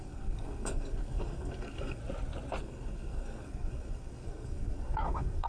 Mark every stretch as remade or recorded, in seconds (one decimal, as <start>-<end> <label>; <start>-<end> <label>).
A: 0.0-2.0 remade; 2.0-2.6 recorded; 2.6-5.5 remade